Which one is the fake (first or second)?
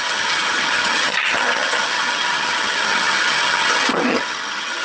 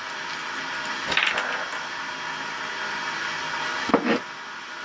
first